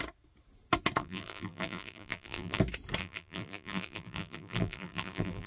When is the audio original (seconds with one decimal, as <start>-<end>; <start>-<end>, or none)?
0.0-1.0; 2.6-3.0